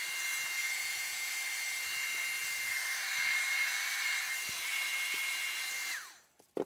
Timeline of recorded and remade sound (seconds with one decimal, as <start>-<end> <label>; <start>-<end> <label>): 0.0-0.6 recorded; 0.6-1.3 remade; 1.3-6.7 recorded